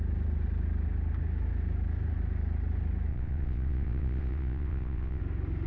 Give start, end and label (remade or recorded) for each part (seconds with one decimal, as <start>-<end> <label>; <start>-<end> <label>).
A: 0.0-3.1 recorded; 3.1-5.2 remade; 5.2-5.7 recorded